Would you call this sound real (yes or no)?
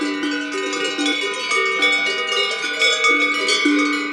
yes